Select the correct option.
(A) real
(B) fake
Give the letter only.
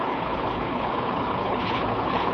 B